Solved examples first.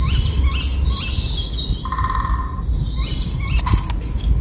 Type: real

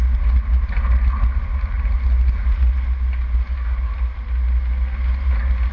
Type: real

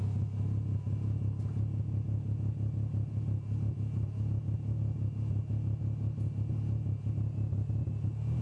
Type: real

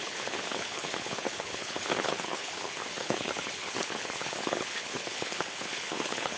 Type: fake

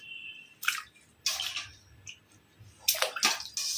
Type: real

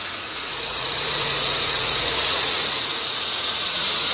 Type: fake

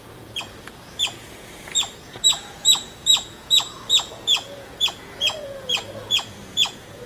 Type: fake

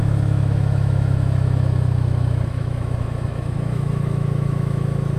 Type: fake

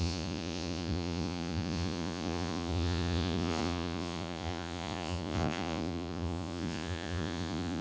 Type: fake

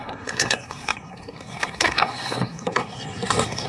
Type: fake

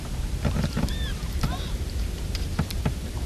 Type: fake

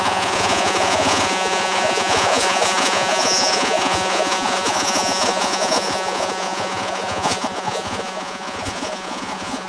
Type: fake